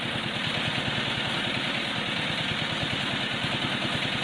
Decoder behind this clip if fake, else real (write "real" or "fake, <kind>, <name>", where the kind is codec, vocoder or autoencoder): real